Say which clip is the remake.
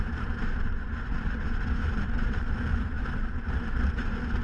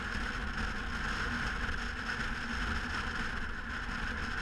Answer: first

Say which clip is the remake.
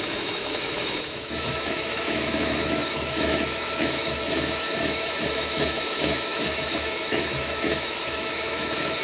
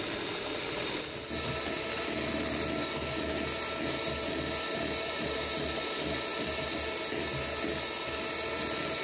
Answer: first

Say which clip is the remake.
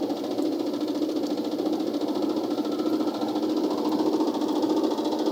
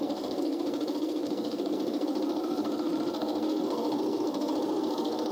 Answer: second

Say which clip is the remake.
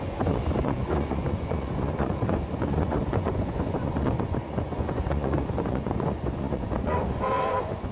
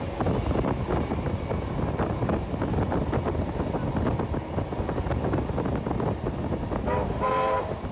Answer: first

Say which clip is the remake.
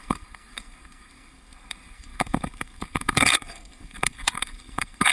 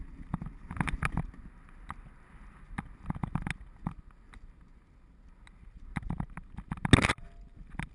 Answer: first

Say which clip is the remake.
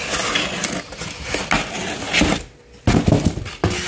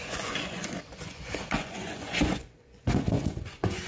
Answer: second